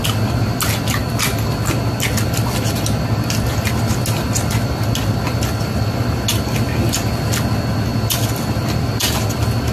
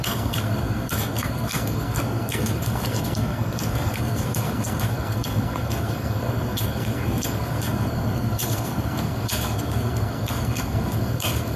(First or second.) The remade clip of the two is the second